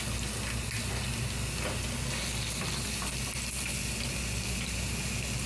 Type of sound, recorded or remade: recorded